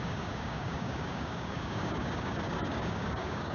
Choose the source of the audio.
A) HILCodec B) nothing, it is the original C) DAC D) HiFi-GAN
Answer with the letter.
C